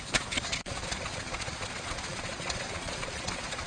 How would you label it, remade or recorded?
remade